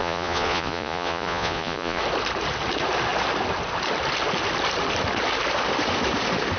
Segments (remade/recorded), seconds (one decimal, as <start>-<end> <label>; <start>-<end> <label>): 0.0-2.0 remade; 2.0-6.6 recorded